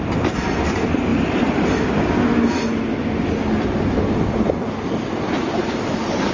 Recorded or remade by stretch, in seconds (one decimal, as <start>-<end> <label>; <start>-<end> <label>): 0.0-6.3 recorded